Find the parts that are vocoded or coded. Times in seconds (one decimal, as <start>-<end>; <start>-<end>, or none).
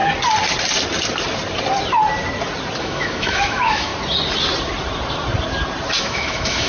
2.8-3.9; 6.0-6.7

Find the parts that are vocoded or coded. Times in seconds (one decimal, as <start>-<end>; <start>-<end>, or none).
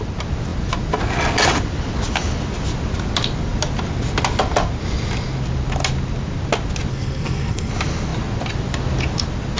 6.9-7.7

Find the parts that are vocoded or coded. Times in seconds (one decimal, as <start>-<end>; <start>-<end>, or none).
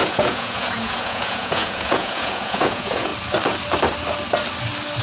0.0-3.1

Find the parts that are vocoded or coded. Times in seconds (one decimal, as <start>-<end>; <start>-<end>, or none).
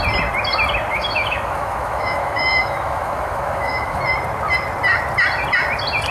0.9-4.0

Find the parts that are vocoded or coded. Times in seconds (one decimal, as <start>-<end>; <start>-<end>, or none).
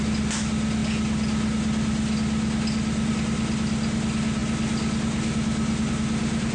none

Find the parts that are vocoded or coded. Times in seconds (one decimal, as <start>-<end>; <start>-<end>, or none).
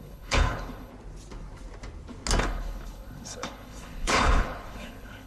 0.0-0.9; 2.4-5.3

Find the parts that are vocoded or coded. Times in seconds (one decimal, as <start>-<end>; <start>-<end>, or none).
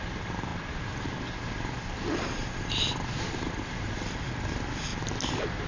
0.0-4.9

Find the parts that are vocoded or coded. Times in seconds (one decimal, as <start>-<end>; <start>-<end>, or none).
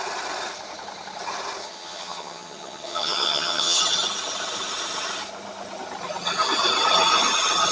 1.6-3.8